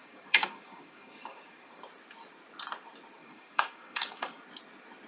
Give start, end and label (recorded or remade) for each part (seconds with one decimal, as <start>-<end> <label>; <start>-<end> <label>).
0.0-1.9 remade; 1.9-3.2 recorded; 3.2-4.4 remade; 4.4-5.1 recorded